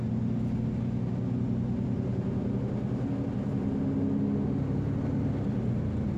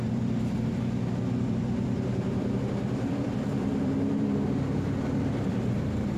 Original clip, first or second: first